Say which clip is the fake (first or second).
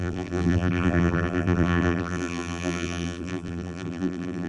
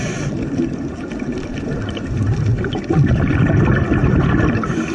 first